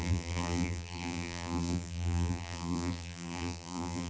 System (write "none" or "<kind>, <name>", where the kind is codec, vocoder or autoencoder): vocoder, BigVGAN v2